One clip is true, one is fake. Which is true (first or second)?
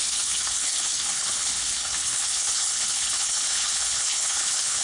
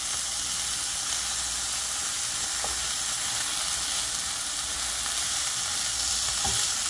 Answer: second